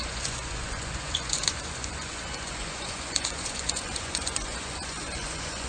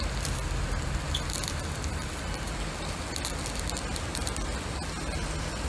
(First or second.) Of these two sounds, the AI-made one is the first